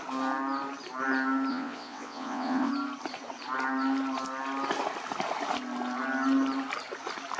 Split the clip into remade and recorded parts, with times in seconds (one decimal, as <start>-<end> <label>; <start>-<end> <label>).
0.0-1.5 recorded; 1.5-2.7 remade; 2.7-7.4 recorded